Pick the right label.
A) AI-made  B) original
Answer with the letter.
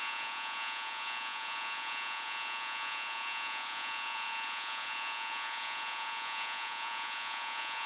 A